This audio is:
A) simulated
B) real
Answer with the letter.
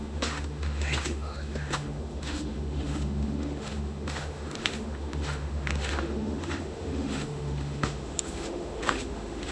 A